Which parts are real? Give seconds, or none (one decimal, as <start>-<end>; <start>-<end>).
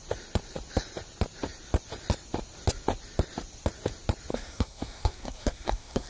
0.0-4.3